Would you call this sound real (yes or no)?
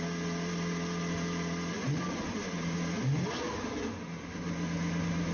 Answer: yes